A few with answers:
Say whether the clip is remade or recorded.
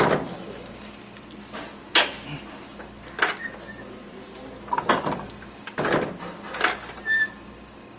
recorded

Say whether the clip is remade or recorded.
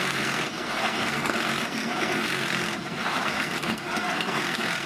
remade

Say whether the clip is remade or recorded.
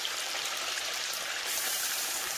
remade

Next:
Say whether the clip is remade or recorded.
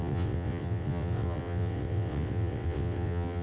remade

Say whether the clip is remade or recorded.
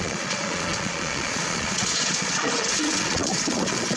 remade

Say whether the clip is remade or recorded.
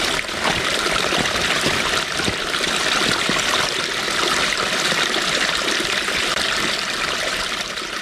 remade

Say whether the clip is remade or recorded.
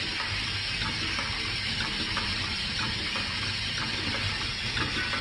recorded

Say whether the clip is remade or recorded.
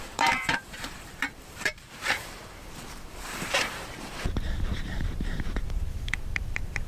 remade